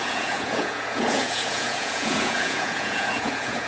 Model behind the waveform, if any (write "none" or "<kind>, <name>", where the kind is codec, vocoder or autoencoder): vocoder, Vocos